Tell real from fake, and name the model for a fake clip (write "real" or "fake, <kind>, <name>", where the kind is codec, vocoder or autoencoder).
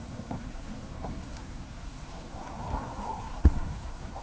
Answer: fake, codec, SNAC